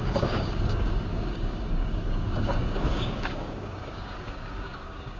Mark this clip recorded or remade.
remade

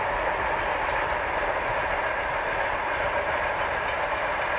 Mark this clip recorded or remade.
recorded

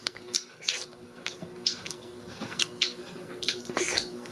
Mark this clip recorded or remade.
remade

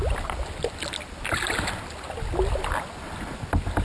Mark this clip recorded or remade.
recorded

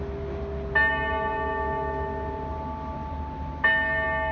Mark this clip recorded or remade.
recorded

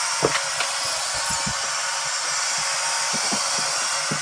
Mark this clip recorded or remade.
recorded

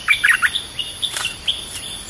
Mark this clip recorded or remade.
recorded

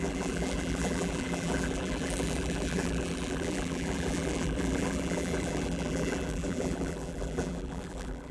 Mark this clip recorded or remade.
remade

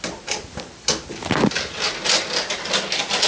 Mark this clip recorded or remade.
recorded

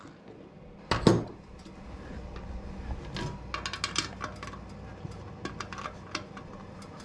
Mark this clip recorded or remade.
recorded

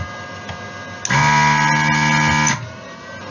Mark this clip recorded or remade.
recorded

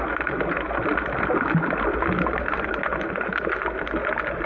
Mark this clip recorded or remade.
recorded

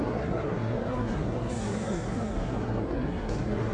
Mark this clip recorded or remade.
remade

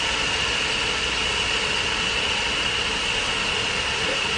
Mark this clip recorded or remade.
recorded